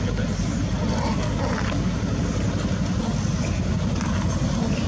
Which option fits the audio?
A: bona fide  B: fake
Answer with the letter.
A